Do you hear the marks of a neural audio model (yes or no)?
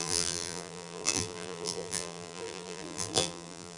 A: yes